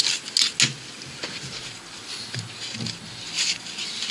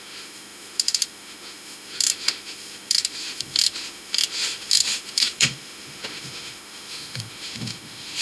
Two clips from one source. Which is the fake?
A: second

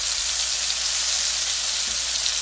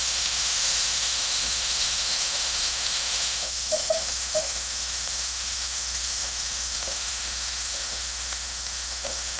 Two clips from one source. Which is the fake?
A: second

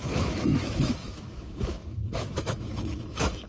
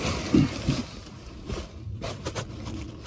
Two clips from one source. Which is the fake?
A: first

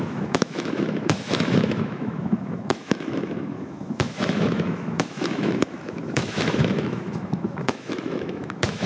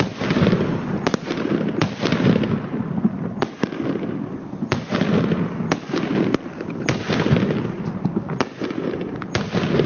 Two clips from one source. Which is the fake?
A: first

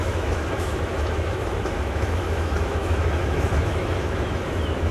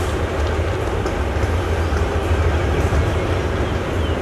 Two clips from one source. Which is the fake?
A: first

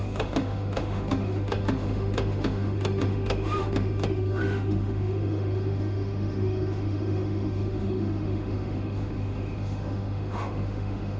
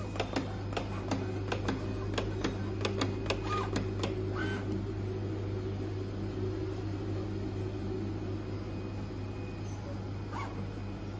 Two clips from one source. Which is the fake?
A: first